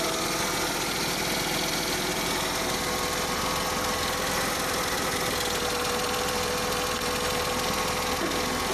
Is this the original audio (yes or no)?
yes